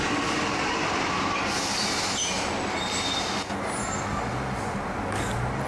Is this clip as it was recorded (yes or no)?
yes